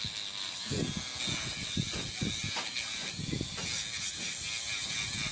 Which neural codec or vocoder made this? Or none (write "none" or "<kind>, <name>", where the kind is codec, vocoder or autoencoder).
none